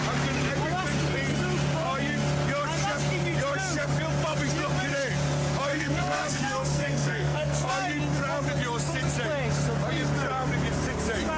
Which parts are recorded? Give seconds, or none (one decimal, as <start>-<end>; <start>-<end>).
0.0-5.7; 7.7-11.4

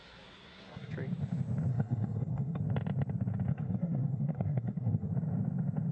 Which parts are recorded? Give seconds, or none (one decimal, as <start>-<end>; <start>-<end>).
0.9-1.7; 2.6-3.5; 5.1-5.9

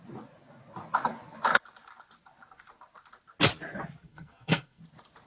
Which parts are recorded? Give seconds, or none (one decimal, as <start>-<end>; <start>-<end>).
0.0-4.1; 4.8-5.3

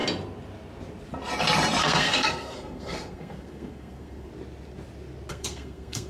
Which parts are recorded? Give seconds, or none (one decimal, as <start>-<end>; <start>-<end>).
0.0-1.8; 4.3-5.3

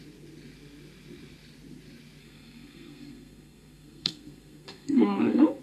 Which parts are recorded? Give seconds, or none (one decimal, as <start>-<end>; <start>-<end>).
0.0-2.2

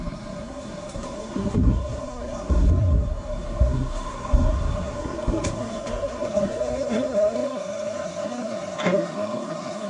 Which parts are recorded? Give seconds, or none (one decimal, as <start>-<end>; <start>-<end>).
none